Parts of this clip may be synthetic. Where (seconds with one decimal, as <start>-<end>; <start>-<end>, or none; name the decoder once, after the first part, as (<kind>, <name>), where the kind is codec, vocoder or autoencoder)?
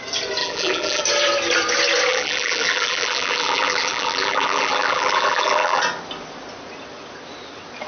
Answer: 0.4-1.0 (vocoder, BigVGAN v2); 2.1-5.8